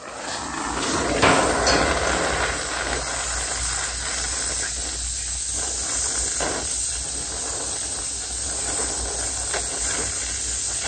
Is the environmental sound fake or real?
real